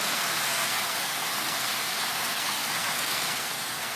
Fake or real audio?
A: fake